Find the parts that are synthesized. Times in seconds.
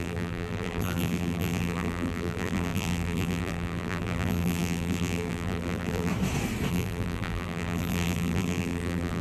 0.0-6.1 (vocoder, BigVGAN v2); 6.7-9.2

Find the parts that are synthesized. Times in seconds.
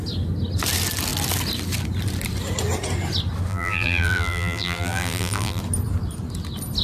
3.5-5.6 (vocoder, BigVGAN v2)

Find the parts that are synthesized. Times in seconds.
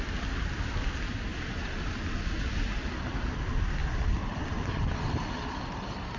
1.3-2.0 (vocoder, BigVGAN v2); 3.8-4.7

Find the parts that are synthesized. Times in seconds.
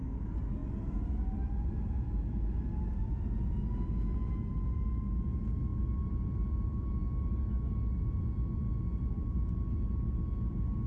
0.6-3.5 (vocoder, BigVGAN v2); 5.7-10.1